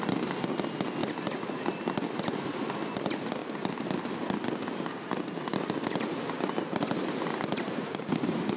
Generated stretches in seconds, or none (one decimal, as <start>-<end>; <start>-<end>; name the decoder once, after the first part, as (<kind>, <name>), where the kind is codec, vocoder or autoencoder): none